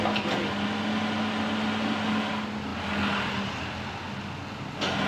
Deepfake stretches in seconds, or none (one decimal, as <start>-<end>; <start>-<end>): none